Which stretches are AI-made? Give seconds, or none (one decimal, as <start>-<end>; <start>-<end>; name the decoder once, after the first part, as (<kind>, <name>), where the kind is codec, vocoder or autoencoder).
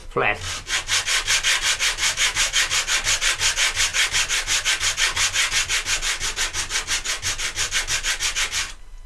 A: 2.0-2.7 (autoencoder, DAC-VAE)